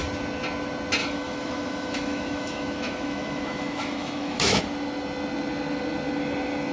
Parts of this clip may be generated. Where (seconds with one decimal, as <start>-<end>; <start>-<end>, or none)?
1.0-4.6